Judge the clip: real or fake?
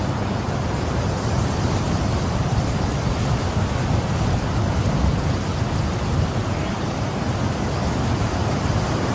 real